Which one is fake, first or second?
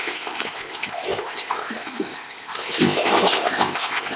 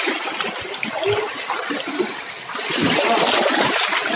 first